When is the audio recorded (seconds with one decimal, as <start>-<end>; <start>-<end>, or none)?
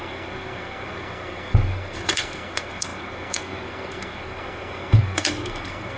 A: none